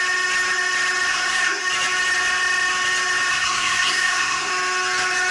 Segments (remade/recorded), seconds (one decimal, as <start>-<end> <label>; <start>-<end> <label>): 0.0-1.1 recorded; 1.1-1.6 remade; 1.6-3.3 recorded; 3.3-4.5 remade; 4.5-5.3 recorded

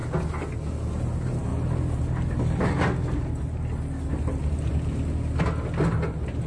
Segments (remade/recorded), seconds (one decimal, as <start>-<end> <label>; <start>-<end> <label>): 0.0-6.5 recorded